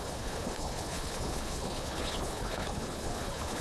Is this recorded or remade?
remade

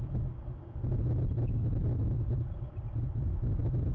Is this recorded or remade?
recorded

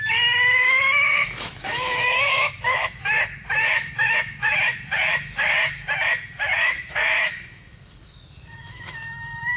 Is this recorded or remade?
remade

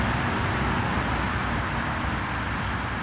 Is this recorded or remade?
recorded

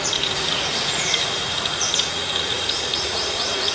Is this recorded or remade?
remade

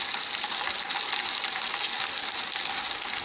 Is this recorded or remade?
recorded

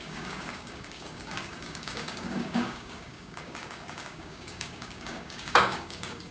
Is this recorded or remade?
remade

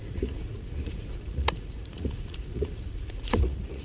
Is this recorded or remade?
remade